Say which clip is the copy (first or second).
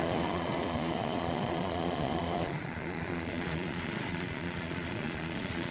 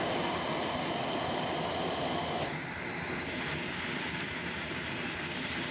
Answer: first